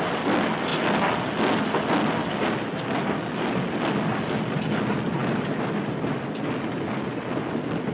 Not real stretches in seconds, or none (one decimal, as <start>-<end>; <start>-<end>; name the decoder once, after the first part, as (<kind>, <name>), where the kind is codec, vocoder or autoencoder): none